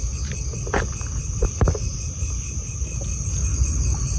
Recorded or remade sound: recorded